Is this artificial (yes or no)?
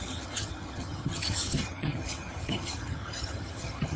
yes